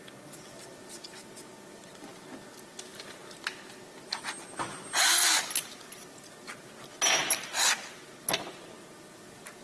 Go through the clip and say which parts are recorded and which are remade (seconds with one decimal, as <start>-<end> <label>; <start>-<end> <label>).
0.0-9.6 recorded